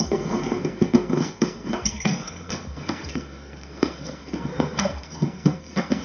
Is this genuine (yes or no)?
no